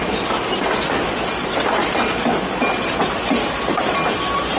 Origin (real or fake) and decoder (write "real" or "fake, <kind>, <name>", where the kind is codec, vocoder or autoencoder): real